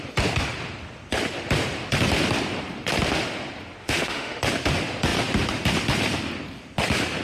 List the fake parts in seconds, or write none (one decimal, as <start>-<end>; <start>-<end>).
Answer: 3.8-4.4